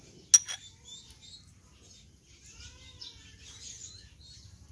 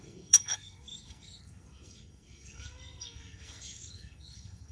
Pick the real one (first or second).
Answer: first